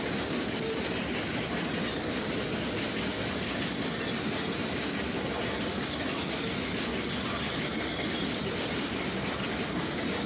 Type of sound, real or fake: real